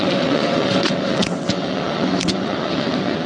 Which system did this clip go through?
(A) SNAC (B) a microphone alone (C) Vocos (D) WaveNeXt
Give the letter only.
D